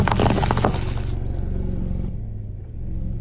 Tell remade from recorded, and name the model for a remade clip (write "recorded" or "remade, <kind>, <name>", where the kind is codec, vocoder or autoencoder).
recorded